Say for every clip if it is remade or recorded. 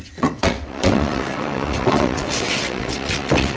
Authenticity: remade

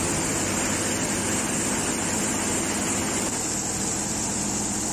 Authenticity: recorded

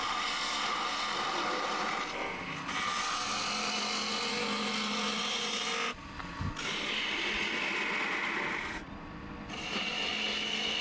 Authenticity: recorded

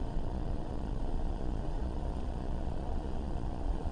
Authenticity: remade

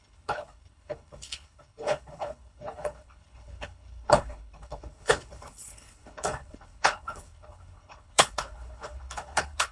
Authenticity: remade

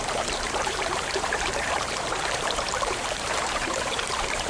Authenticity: remade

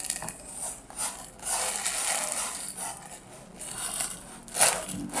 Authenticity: recorded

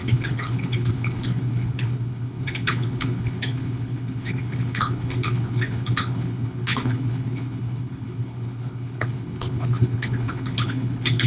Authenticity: remade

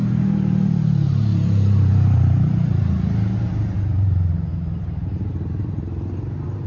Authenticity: remade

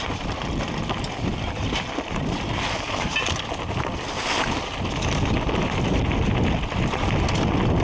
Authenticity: recorded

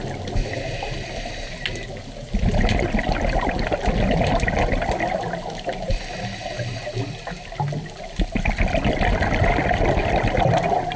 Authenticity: recorded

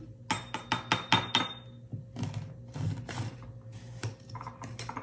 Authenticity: recorded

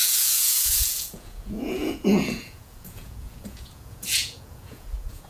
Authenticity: remade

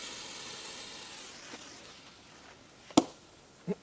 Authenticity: recorded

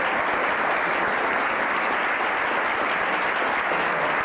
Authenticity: recorded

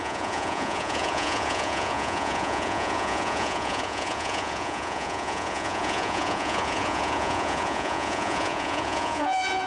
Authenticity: remade